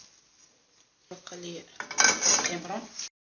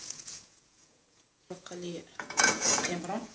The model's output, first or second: second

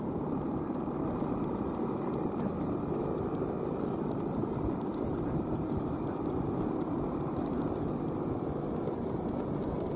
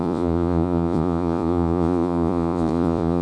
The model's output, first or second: second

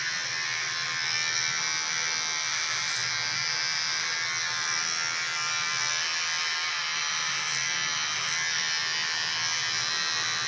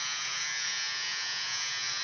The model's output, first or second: second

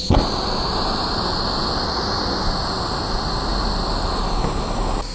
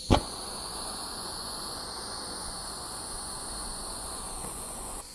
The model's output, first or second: second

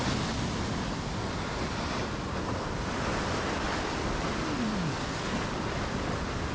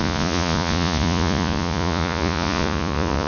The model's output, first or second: second